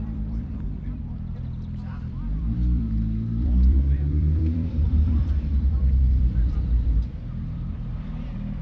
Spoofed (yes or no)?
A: yes